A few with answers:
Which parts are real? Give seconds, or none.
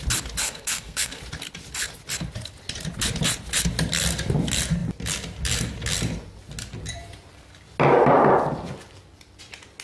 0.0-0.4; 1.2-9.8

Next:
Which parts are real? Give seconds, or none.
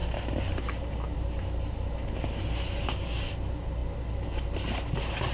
0.0-5.3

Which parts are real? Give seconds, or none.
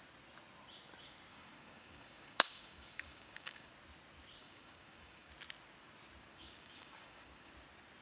0.0-1.3; 3.7-4.4; 5.3-6.3; 7.5-8.0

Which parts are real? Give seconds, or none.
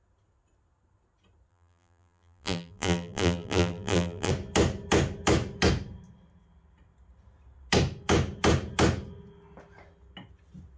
0.0-1.5; 4.3-10.8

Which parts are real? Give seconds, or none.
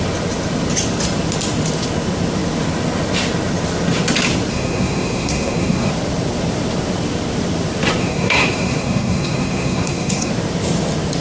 0.0-4.5; 5.9-8.0; 10.3-11.2